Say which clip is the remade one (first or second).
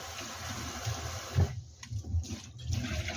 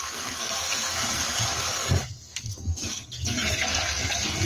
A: second